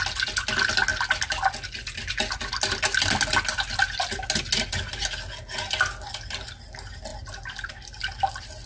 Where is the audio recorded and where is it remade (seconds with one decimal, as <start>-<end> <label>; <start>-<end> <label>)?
0.0-8.7 recorded